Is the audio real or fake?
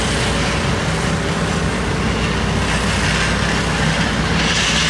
real